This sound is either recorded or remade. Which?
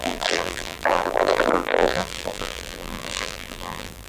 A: remade